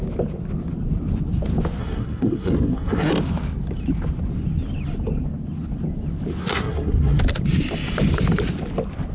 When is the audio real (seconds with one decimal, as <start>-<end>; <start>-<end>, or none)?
0.0-1.8; 3.1-6.4; 7.2-9.1